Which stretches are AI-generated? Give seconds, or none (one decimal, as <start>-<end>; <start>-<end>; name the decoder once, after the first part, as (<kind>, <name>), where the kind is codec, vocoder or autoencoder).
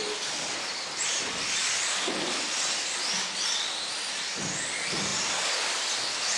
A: none